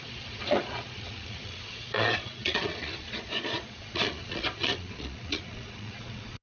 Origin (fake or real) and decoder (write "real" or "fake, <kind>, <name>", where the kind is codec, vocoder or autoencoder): fake, vocoder, Vocos